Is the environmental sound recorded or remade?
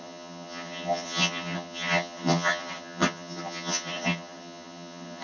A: remade